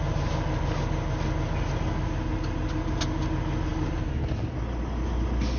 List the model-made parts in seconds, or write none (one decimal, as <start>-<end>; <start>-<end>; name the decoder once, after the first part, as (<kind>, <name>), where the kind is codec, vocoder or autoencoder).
none